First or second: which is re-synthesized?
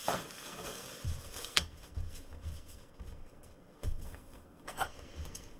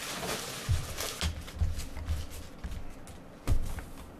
first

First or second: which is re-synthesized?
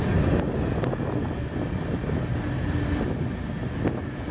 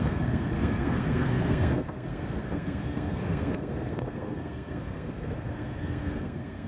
second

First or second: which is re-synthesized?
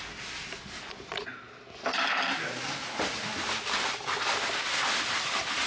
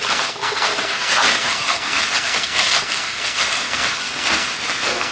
second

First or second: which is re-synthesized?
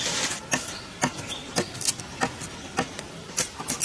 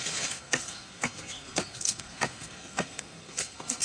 second